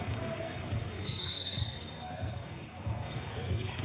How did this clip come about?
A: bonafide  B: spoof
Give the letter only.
B